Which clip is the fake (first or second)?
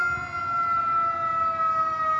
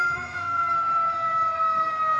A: second